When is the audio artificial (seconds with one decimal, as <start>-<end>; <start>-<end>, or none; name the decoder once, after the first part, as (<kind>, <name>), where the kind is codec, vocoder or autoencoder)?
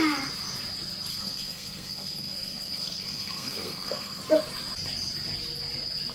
1.1-4.2 (codec, SNAC)